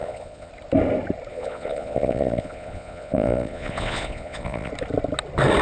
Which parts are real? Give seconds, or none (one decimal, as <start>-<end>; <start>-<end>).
0.5-1.3; 4.7-5.6

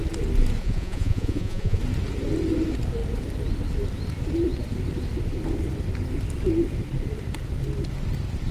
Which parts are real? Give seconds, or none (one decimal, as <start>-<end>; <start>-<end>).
0.0-0.6; 1.8-8.5

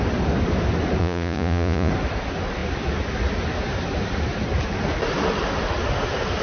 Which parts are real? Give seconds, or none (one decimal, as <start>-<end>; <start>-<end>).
0.0-1.0; 1.9-6.4

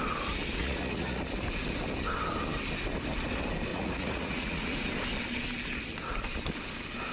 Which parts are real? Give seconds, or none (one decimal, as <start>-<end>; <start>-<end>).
0.0-0.6; 1.2-3.7; 4.9-7.1

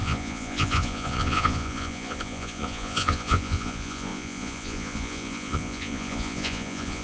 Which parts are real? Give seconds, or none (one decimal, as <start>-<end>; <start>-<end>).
none